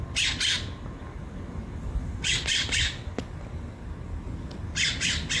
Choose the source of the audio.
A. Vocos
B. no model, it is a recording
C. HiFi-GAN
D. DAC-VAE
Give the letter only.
B